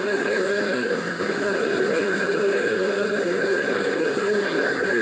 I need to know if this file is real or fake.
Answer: fake